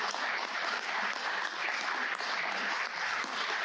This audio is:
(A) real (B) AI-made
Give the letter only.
B